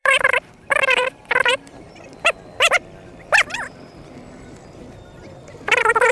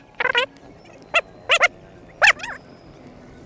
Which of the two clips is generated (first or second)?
first